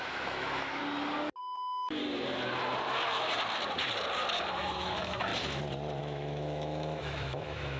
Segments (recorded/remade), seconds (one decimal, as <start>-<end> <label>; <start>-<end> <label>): 0.0-0.8 remade; 0.8-1.4 recorded; 1.4-2.0 remade; 2.0-4.5 recorded; 4.5-5.3 remade; 5.3-6.0 recorded; 6.0-7.8 remade